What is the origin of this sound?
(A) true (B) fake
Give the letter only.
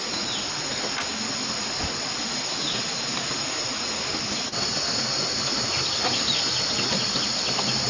A